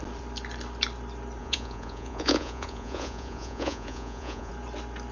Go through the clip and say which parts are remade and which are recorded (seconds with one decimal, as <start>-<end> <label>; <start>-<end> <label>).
0.0-1.4 recorded; 1.4-4.5 remade; 4.5-5.1 recorded